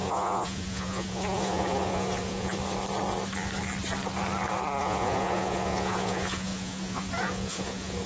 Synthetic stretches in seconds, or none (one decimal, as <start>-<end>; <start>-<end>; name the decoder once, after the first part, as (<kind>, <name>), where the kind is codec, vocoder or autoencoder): 0.0-2.5 (vocoder, Vocos); 4.8-8.1

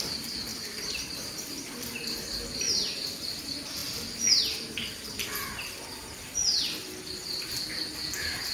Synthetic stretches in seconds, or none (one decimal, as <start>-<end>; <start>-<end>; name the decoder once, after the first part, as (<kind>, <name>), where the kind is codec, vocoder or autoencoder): 0.5-1.9 (vocoder, BigVGAN v2)

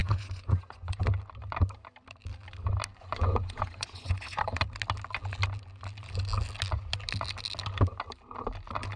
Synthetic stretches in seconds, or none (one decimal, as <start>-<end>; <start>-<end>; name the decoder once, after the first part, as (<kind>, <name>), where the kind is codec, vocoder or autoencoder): 0.0-1.0 (vocoder, Vocos); 2.9-4.4

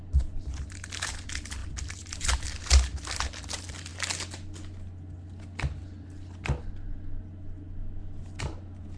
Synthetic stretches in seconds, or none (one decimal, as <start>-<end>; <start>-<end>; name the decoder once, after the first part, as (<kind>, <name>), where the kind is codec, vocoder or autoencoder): none

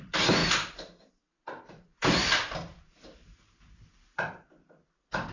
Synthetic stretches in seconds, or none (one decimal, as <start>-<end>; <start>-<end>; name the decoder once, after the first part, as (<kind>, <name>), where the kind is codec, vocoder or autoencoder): 0.0-0.4 (vocoder, BigVGAN v2); 1.1-5.3